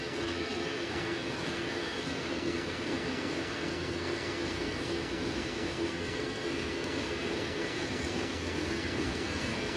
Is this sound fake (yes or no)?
yes